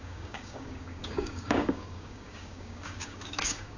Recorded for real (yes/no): no